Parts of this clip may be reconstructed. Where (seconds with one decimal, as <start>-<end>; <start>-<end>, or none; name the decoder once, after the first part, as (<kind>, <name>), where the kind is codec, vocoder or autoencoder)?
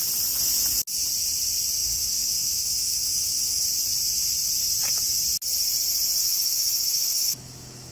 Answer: 1.8-3.6 (autoencoder, DAC-VAE); 6.2-7.9